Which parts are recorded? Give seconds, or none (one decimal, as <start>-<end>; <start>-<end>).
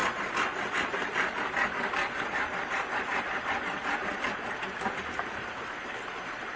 0.0-6.6